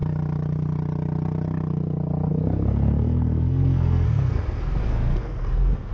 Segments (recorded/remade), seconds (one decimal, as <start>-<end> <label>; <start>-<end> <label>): 0.0-2.3 recorded; 2.3-5.9 remade